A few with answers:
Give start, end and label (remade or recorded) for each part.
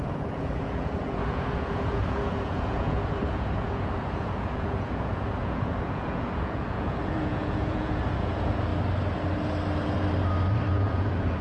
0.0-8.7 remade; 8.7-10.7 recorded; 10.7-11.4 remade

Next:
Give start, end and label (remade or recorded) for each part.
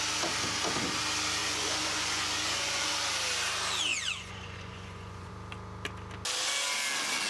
0.0-1.4 recorded; 1.4-2.9 remade; 2.9-3.9 recorded; 3.9-5.3 remade; 5.3-7.3 recorded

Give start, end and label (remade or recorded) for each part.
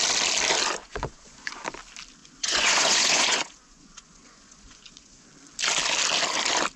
0.0-0.8 recorded; 0.8-1.6 remade; 1.6-2.2 recorded; 2.2-5.3 remade; 5.3-6.8 recorded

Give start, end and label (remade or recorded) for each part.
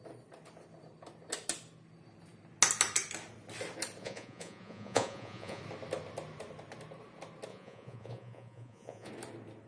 0.0-4.0 recorded; 4.0-5.6 remade; 5.6-7.5 recorded; 7.5-9.1 remade; 9.1-9.7 recorded